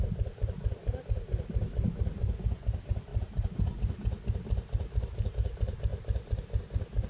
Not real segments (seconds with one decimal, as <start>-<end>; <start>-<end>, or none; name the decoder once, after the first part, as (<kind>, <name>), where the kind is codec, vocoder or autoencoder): none